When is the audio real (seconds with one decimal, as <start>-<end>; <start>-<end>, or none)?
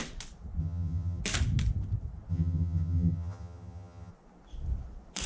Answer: 0.0-0.6; 1.2-2.3; 4.1-5.3